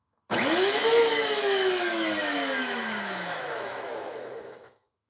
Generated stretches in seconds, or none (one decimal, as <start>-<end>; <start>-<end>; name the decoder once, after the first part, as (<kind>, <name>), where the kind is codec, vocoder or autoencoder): 0.0-5.1 (autoencoder, DAC-VAE)